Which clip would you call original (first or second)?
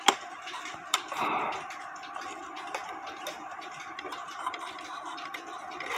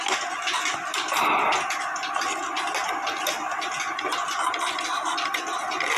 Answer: second